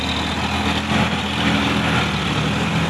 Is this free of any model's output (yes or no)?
yes